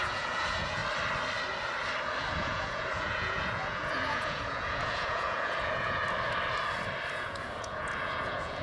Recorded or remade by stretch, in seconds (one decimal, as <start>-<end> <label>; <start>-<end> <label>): 0.0-0.8 remade; 0.8-2.3 recorded; 2.3-6.0 remade; 6.0-7.1 recorded; 7.1-8.6 remade